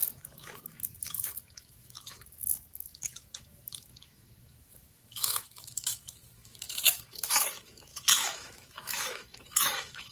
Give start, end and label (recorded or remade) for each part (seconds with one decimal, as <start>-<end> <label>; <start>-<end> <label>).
0.0-10.1 remade